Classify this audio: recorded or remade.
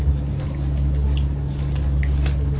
recorded